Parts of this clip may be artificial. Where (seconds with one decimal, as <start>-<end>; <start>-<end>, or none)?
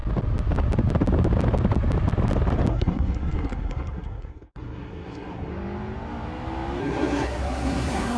2.7-5.5; 6.8-8.2